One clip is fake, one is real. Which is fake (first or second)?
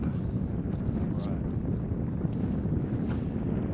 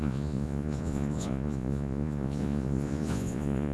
second